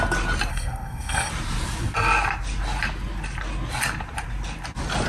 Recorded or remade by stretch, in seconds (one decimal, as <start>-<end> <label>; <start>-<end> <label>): 0.0-0.5 recorded; 0.5-1.3 remade; 1.3-5.1 recorded

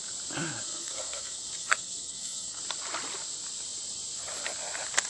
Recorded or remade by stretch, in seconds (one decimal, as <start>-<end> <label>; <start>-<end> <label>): 0.0-0.6 recorded; 0.6-2.6 remade; 2.6-5.1 recorded

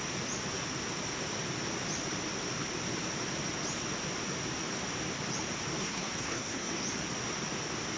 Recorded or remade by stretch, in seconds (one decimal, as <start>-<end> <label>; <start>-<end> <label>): 0.0-5.8 recorded; 5.8-6.7 remade; 6.7-8.0 recorded

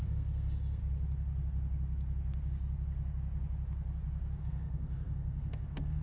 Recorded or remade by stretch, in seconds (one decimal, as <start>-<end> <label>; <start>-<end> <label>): 0.0-0.8 remade; 0.8-4.4 recorded; 4.4-6.0 remade

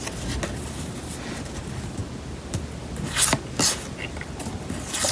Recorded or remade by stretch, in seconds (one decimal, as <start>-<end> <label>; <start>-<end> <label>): 0.0-5.1 recorded

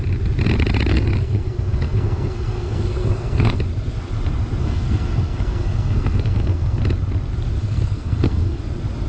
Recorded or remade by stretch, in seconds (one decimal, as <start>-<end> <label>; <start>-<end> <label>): 0.0-0.9 recorded; 0.9-3.6 remade; 3.6-4.6 recorded; 4.6-6.8 remade; 6.8-7.6 recorded; 7.6-8.6 remade; 8.6-9.1 recorded

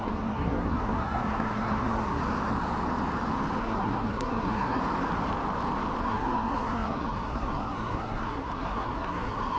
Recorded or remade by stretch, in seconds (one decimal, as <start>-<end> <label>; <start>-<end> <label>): 0.0-2.2 remade; 2.2-3.6 recorded; 3.6-4.8 remade; 4.8-6.0 recorded; 6.0-9.6 remade

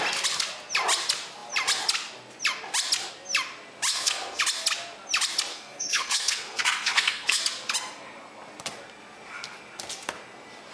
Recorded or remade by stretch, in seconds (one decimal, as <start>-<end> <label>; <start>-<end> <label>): 0.0-3.9 recorded; 3.9-4.4 remade; 4.4-5.5 recorded; 5.5-7.4 remade; 7.4-10.7 recorded